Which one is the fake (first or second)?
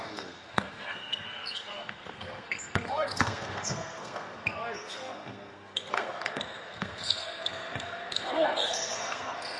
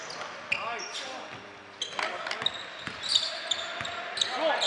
first